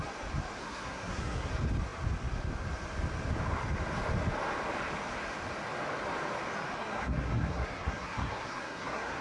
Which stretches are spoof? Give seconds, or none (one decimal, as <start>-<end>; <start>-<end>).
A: 0.6-1.5; 6.8-9.2